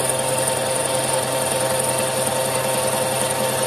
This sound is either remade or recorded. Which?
recorded